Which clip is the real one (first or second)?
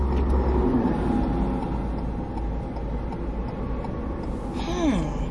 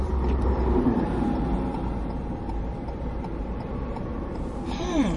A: first